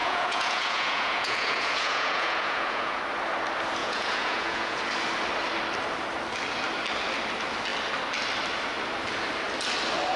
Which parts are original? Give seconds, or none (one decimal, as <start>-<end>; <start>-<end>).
3.0-3.8; 4.8-10.2